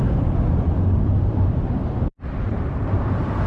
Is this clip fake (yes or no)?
yes